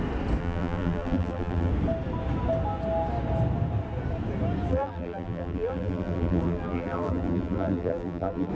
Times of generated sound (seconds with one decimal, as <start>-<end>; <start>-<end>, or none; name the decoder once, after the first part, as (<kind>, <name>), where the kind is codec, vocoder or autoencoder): 0.4-1.7 (vocoder, BigVGAN v2); 4.7-8.5